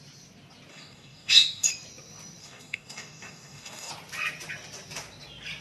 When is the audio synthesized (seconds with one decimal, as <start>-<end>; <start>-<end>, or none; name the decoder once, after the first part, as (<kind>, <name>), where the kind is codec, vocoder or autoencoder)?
0.7-1.7 (codec, DAC); 2.4-3.9